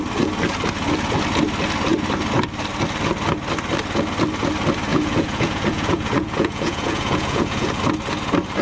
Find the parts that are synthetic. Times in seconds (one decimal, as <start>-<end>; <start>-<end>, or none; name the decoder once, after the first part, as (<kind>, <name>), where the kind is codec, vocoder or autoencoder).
4.9-7.8 (vocoder, Vocos)